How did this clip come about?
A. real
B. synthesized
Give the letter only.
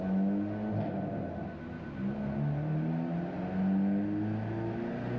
A